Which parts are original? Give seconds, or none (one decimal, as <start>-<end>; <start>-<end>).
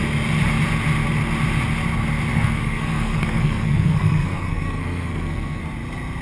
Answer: 0.0-2.3; 5.6-6.2